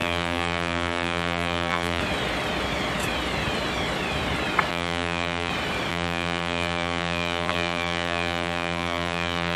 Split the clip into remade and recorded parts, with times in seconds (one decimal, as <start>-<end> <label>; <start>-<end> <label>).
0.0-2.0 remade; 2.0-4.7 recorded; 4.7-5.5 remade; 5.5-5.9 recorded; 5.9-9.6 remade